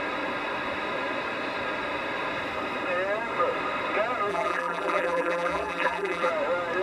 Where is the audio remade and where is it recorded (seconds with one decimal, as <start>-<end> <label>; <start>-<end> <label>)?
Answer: 0.0-4.3 recorded; 4.3-6.3 remade; 6.3-6.8 recorded